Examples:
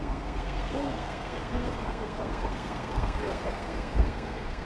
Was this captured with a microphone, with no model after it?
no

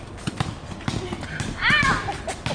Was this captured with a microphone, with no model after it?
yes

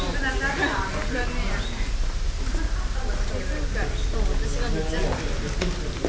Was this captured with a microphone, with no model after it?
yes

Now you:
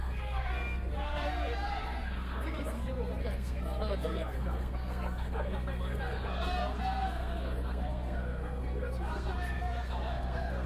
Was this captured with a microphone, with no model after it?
no